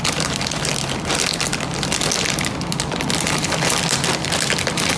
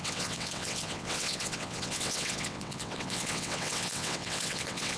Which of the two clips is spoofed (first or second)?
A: second